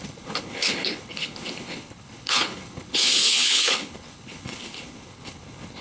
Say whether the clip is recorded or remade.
remade